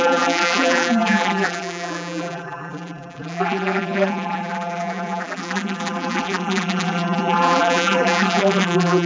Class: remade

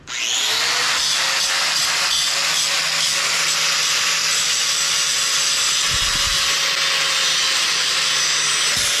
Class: recorded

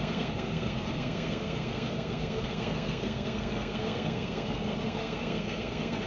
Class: remade